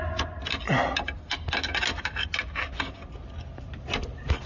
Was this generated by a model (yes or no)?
no